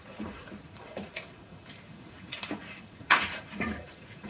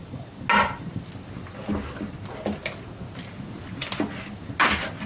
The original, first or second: second